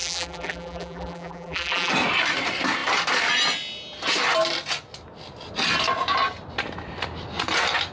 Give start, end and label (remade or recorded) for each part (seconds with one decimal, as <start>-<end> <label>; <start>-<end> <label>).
0.0-1.9 remade; 1.9-7.9 recorded

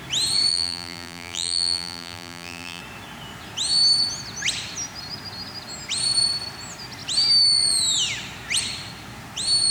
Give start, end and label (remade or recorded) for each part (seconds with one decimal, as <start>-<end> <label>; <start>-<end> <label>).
0.0-0.5 recorded; 0.5-2.8 remade; 2.8-9.7 recorded

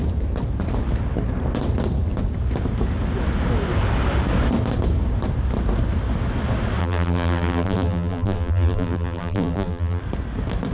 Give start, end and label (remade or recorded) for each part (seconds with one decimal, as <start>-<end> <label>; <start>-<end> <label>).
0.0-6.8 recorded; 6.8-10.0 remade; 10.0-10.7 recorded